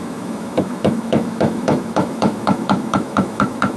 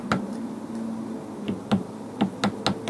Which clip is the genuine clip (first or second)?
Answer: second